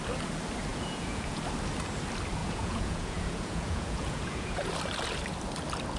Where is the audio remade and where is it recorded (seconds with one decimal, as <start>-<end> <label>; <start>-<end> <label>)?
0.0-0.7 recorded; 0.7-1.4 remade; 1.4-2.4 recorded; 2.4-4.7 remade; 4.7-6.0 recorded